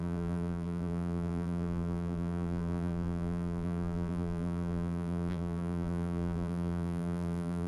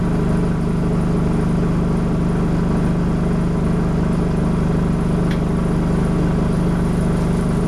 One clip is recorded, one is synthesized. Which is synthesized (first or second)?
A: first